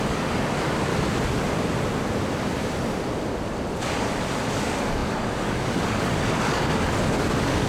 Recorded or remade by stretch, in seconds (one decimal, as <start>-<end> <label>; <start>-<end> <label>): 0.0-0.9 remade; 0.9-4.5 recorded; 4.5-7.7 remade